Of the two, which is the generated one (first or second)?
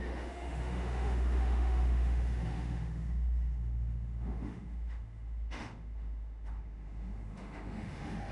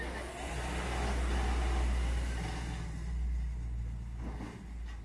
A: first